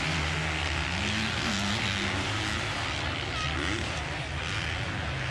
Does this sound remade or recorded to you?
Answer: recorded